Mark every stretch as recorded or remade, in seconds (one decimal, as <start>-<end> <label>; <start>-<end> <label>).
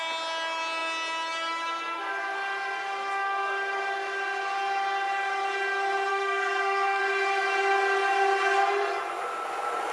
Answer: 0.0-6.1 recorded; 6.1-7.0 remade; 7.0-9.9 recorded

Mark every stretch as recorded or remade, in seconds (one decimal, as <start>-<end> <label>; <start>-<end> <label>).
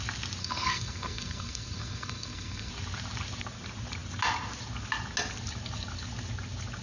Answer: 0.0-0.4 recorded; 0.4-2.7 remade; 2.7-6.8 recorded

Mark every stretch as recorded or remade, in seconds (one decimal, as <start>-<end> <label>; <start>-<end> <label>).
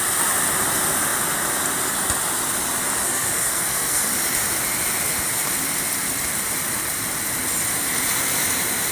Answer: 0.0-3.0 recorded; 3.0-4.1 remade; 4.1-8.9 recorded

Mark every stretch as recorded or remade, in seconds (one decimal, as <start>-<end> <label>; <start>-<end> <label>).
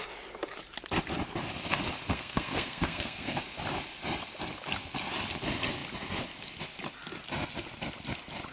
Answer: 0.0-2.1 recorded; 2.1-3.4 remade; 3.4-8.5 recorded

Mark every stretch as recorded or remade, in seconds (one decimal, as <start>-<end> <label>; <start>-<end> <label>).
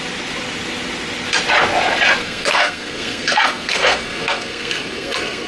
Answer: 0.0-2.2 recorded; 2.2-5.5 remade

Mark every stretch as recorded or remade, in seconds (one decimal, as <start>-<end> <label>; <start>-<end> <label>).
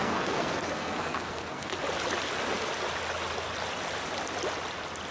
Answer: 0.0-1.7 remade; 1.7-5.1 recorded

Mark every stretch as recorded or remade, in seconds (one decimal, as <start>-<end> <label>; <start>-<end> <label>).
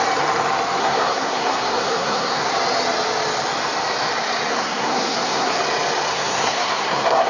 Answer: 0.0-0.8 recorded; 0.8-2.5 remade; 2.5-4.5 recorded; 4.5-5.6 remade; 5.6-6.1 recorded; 6.1-7.3 remade